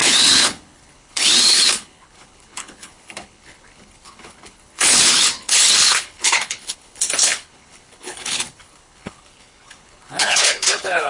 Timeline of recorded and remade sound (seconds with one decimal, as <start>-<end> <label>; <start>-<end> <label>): 0.0-11.1 remade